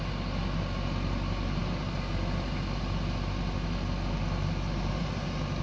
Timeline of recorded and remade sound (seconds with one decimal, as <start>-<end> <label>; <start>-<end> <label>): 0.0-5.6 recorded